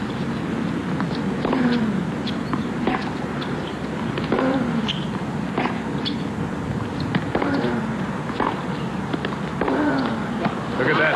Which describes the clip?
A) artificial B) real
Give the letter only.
B